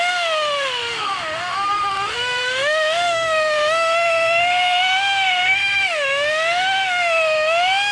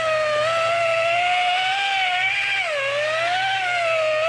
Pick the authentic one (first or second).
second